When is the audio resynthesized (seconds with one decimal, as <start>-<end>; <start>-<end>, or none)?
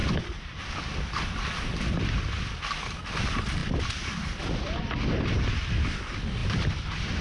0.0-2.4; 3.6-4.8; 6.4-7.2